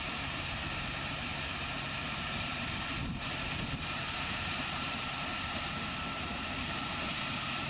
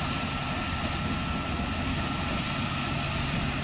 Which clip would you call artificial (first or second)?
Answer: first